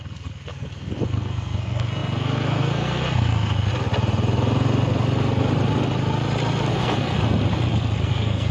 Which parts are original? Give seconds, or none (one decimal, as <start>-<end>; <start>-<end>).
3.7-6.7; 7.2-8.0